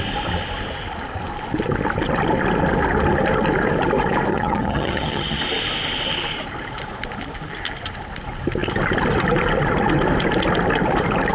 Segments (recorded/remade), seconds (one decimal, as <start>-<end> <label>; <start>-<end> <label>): 0.0-4.3 recorded; 4.3-5.4 remade; 5.4-11.3 recorded

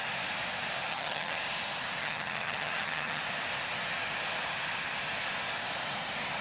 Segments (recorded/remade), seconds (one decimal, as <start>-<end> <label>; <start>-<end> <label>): 0.0-0.9 recorded; 0.9-1.4 remade; 1.4-2.0 recorded; 2.0-3.2 remade; 3.2-6.4 recorded

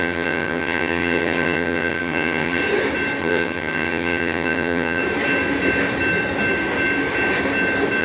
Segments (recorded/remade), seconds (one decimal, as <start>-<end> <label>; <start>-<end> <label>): 0.0-2.6 remade; 2.6-3.2 recorded; 3.2-5.0 remade; 5.0-8.0 recorded

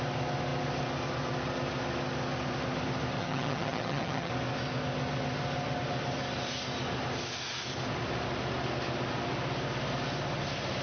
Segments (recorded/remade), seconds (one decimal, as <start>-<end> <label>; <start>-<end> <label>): 0.0-3.2 recorded; 3.2-4.3 remade; 4.3-10.8 recorded

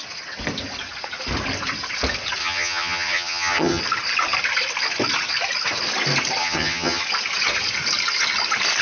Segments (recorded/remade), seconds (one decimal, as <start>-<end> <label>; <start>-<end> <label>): 0.0-2.4 recorded; 2.4-3.8 remade; 3.8-6.4 recorded; 6.4-7.0 remade; 7.0-8.8 recorded

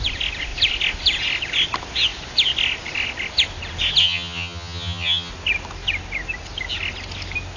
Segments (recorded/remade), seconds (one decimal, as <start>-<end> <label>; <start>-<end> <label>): 0.0-4.0 recorded; 4.0-5.3 remade; 5.3-7.6 recorded

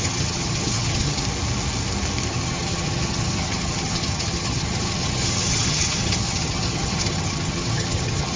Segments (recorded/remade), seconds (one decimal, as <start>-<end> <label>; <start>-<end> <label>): 0.0-1.2 remade; 1.2-2.3 recorded; 2.3-8.4 remade

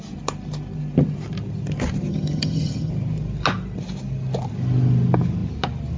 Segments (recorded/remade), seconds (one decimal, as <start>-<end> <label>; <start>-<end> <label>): 0.0-2.1 recorded; 2.1-2.9 remade; 2.9-6.0 recorded